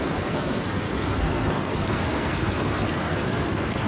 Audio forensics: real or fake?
fake